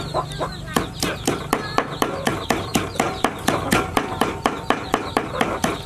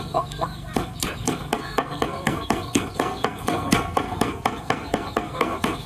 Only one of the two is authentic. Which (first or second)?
first